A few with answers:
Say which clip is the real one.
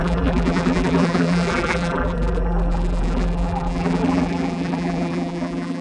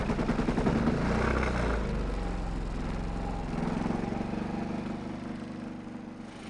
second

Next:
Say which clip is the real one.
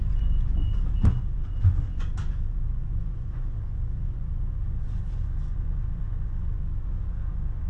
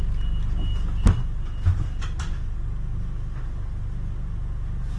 second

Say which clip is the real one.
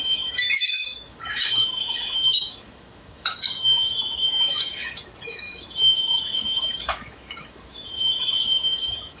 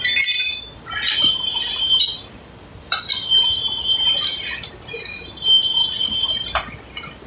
second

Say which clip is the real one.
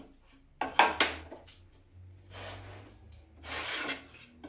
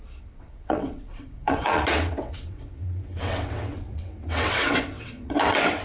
first